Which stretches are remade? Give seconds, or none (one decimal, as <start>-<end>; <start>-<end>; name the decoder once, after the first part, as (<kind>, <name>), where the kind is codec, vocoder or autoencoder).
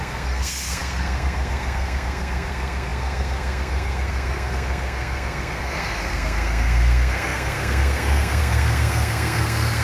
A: 0.0-9.8 (codec, SNAC)